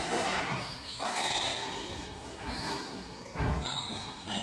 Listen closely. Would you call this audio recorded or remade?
remade